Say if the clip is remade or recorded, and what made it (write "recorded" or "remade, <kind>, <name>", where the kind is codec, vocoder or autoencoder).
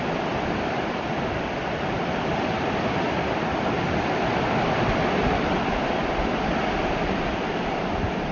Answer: remade, vocoder, BigVGAN v2